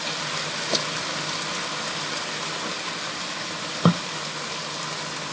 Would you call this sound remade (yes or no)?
no